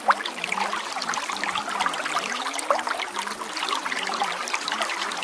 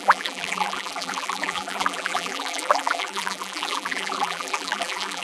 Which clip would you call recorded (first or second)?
first